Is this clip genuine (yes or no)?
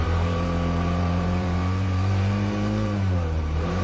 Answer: no